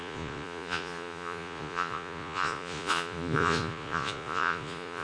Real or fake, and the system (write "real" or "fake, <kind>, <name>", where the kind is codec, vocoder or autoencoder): fake, vocoder, Vocos